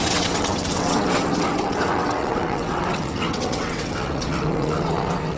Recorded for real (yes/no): no